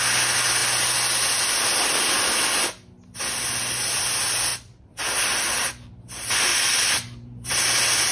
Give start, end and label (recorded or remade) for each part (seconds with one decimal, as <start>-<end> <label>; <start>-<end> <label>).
0.0-4.5 recorded; 4.5-5.0 remade; 5.0-6.5 recorded; 6.5-7.6 remade; 7.6-8.1 recorded